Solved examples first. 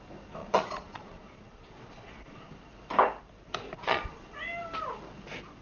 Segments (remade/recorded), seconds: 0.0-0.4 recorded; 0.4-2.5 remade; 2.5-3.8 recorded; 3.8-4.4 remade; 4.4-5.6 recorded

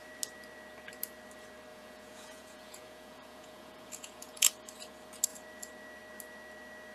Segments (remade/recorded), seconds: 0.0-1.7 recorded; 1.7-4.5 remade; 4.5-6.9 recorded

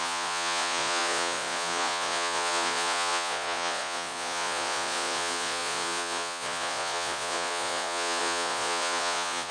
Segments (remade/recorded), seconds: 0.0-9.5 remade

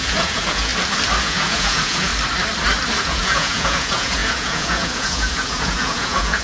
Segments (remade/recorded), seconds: 0.0-0.7 remade; 0.7-1.2 recorded; 1.2-2.1 remade; 2.1-3.0 recorded; 3.0-6.4 remade